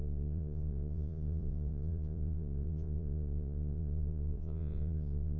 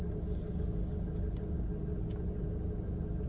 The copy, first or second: first